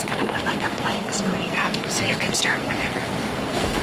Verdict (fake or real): fake